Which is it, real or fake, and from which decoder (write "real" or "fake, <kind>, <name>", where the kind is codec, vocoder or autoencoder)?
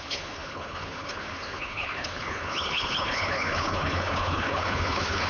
fake, codec, HILCodec